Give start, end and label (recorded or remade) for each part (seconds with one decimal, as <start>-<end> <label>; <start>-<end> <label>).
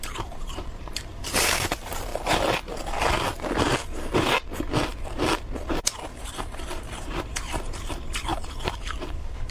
0.0-2.1 remade; 2.1-6.2 recorded; 6.2-9.5 remade